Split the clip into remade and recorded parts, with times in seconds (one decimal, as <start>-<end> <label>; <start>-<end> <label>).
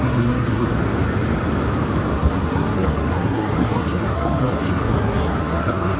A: 0.0-0.7 remade; 0.7-2.1 recorded; 2.1-6.0 remade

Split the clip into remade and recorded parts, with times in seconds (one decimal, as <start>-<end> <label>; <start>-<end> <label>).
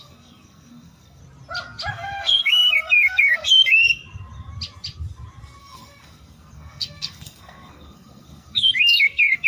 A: 0.0-1.2 remade; 1.2-1.9 recorded; 1.9-4.0 remade; 4.0-5.6 recorded; 5.6-9.5 remade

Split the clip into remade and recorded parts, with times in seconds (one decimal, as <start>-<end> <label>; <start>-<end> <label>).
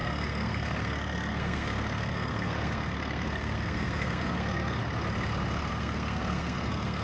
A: 0.0-4.8 remade; 4.8-5.7 recorded; 5.7-7.0 remade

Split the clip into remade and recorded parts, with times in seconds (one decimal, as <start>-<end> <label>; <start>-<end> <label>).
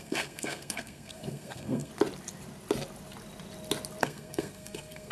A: 0.0-1.9 remade; 1.9-4.0 recorded; 4.0-5.1 remade